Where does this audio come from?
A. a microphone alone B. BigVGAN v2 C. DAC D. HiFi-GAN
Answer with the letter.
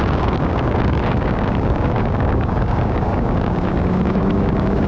C